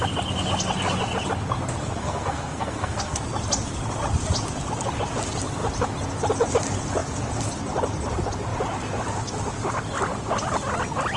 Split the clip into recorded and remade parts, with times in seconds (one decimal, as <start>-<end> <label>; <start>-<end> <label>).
0.0-1.8 recorded; 1.8-3.2 remade; 3.2-11.2 recorded

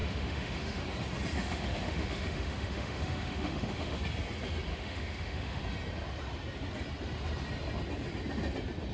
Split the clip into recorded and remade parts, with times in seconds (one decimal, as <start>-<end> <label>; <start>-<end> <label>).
0.0-0.8 remade; 0.8-1.4 recorded; 1.4-4.0 remade; 4.0-4.7 recorded; 4.7-5.6 remade; 5.6-8.9 recorded